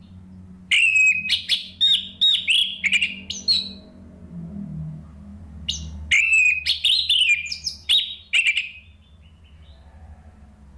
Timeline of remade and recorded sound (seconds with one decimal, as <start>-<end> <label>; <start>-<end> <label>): 0.0-10.8 recorded